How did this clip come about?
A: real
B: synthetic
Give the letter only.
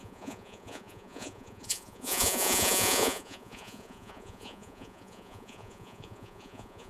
B